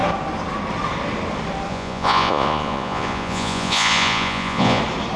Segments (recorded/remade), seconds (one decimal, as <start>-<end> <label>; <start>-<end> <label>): 0.0-1.7 recorded; 1.7-4.8 remade; 4.8-5.2 recorded